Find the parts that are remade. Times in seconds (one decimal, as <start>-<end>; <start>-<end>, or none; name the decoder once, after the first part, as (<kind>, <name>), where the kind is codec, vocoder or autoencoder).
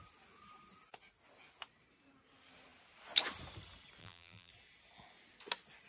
4.0-4.5 (vocoder, BigVGAN v2)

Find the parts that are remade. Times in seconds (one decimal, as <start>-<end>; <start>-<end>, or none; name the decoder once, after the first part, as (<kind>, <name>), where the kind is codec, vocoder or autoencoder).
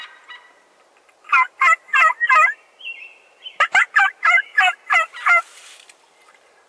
4.0-6.7 (vocoder, BigVGAN v2)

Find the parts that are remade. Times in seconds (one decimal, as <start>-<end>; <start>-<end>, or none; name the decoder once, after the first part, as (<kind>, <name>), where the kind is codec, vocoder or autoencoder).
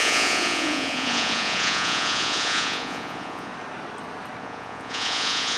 0.0-3.5 (vocoder, Vocos); 4.4-5.6